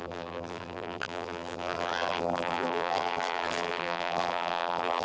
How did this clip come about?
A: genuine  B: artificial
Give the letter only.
B